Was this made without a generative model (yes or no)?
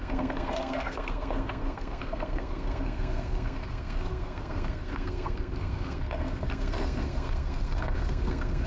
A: no